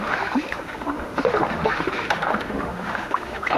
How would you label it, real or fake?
fake